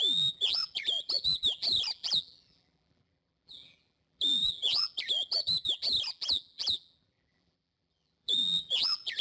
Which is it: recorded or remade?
remade